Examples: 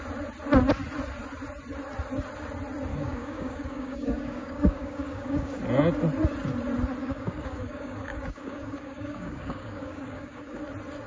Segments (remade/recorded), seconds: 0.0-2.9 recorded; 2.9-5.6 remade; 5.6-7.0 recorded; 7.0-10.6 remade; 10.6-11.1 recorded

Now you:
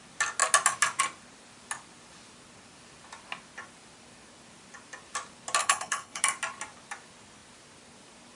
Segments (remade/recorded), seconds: 0.0-5.6 recorded; 5.6-6.2 remade; 6.2-8.4 recorded

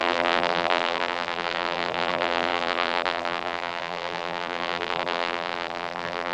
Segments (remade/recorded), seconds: 0.0-6.3 remade

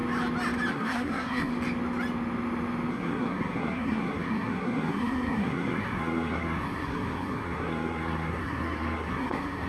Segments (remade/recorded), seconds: 0.0-0.7 recorded; 0.7-1.5 remade; 1.5-2.9 recorded; 2.9-9.7 remade

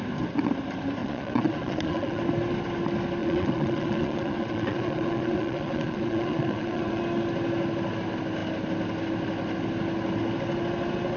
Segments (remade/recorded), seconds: 0.0-1.0 recorded; 1.0-2.2 remade; 2.2-3.2 recorded; 3.2-7.0 remade; 7.0-11.2 recorded

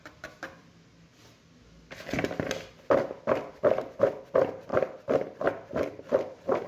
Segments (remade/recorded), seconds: 0.0-6.7 recorded